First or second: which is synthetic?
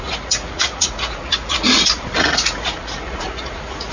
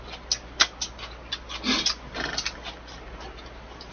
first